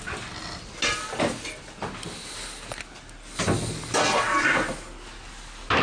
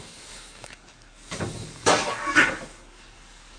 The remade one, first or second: second